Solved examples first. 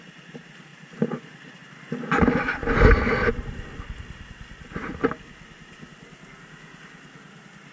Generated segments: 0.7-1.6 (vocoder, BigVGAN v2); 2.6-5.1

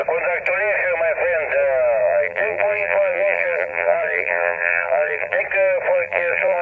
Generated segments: 2.0-5.4 (vocoder, BigVGAN v2); 5.9-6.6